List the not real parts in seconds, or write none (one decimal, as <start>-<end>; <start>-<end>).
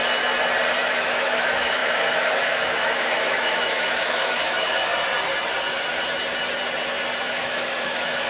0.8-4.9; 7.2-8.3